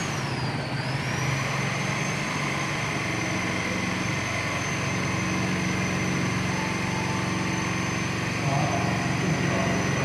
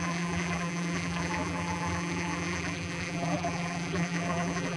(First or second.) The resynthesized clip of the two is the second